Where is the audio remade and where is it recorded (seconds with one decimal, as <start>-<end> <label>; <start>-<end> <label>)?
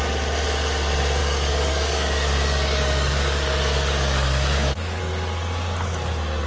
0.0-1.2 recorded; 1.2-5.0 remade; 5.0-6.5 recorded